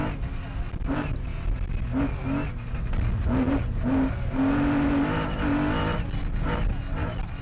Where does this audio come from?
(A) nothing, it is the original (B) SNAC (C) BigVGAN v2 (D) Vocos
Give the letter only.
A